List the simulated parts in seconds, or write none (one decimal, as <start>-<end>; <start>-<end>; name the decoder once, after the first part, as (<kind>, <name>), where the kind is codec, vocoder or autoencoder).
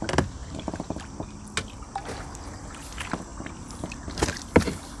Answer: 0.4-1.2 (vocoder, BigVGAN v2)